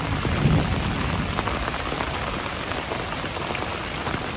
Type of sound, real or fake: real